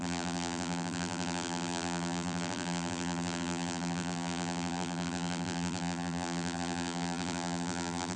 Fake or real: fake